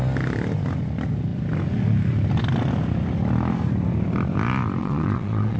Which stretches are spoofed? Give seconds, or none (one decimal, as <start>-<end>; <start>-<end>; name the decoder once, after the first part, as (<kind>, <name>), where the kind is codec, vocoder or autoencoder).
4.8-5.6 (vocoder, WaveNeXt)